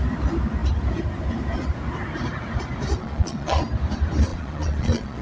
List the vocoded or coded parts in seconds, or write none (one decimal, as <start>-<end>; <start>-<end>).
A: 3.0-3.6; 4.3-5.2

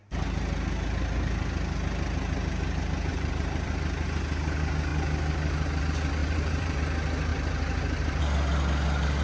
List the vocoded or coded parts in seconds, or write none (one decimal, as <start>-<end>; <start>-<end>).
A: 3.1-3.7; 6.2-6.8; 7.3-8.2

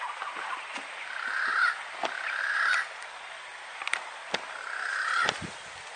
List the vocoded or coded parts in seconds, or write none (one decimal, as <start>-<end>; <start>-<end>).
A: none

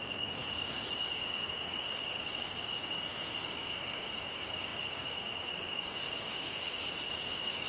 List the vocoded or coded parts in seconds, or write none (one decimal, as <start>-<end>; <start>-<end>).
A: 0.0-7.7

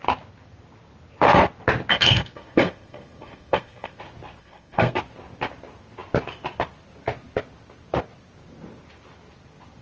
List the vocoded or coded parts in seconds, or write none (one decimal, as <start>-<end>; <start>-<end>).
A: 1.9-4.0; 4.4-5.0

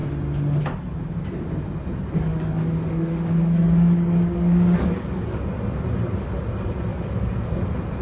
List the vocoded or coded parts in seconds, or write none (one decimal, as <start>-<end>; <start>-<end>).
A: 2.3-5.4; 6.9-7.5

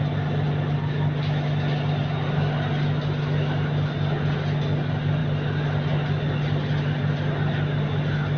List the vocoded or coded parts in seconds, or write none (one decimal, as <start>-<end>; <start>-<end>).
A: none